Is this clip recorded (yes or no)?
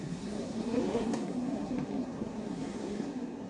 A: no